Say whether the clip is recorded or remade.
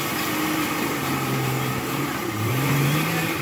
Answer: remade